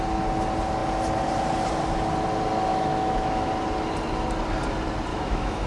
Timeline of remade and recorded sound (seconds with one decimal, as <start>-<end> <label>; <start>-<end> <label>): 0.0-2.7 recorded; 2.7-3.5 remade; 3.5-5.1 recorded; 5.1-5.7 remade